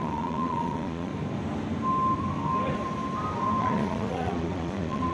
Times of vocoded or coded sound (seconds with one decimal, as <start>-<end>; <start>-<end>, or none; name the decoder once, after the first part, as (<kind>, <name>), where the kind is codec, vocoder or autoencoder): 0.0-1.1 (vocoder, Vocos); 3.6-5.1